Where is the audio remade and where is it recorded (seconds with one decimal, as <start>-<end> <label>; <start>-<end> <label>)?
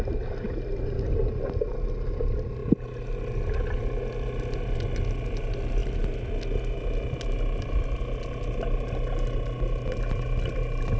0.0-11.0 recorded